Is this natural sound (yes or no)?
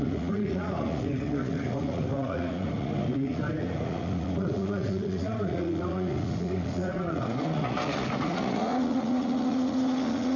no